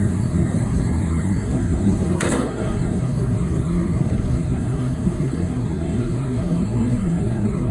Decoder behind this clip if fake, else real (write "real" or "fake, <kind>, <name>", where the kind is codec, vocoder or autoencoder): fake, codec, SNAC